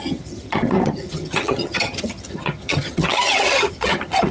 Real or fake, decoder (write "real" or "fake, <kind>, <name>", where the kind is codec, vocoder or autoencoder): fake, vocoder, HiFi-GAN